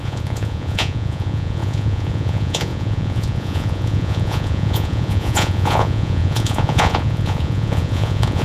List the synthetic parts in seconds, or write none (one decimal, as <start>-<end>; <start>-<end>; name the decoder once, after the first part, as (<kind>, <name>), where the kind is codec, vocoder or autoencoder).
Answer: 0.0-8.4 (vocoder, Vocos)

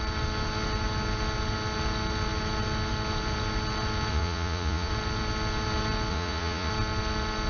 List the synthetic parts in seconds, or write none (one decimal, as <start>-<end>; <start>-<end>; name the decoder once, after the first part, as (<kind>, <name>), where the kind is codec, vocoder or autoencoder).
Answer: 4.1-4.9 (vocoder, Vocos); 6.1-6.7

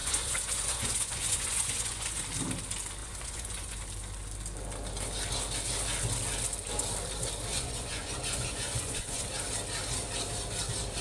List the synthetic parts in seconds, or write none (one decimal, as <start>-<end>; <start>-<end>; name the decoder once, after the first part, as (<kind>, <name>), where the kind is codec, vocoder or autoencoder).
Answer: 0.0-2.2 (vocoder, Vocos); 3.0-3.8; 7.5-9.3